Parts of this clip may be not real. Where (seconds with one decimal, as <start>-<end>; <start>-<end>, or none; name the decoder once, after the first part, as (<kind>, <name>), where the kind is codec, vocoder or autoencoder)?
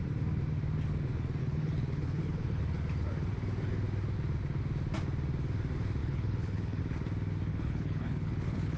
1.4-2.6 (codec, HILCodec); 6.0-6.8; 7.5-8.8